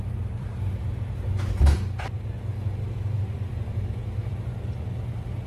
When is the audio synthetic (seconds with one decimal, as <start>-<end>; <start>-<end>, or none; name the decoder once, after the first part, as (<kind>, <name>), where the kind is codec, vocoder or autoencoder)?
0.0-0.5 (vocoder, BigVGAN v2); 1.6-4.3